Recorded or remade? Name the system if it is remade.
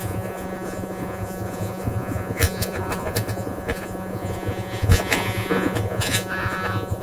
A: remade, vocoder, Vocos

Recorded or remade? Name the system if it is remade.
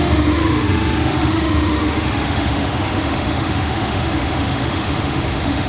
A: remade, autoencoder, DAC-VAE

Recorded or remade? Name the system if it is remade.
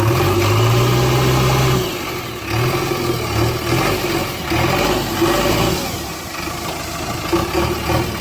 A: recorded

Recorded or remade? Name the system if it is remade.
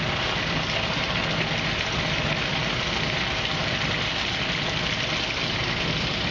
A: recorded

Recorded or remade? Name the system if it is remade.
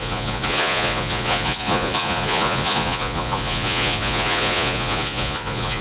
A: remade, vocoder, Vocos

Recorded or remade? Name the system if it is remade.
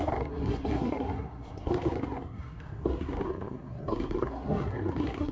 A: remade, codec, SNAC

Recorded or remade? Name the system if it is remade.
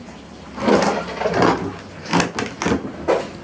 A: recorded